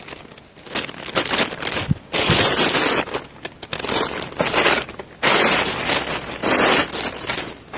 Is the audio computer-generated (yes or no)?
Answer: no